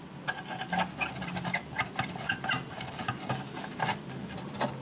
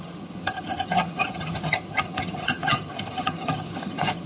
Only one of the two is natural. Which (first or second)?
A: first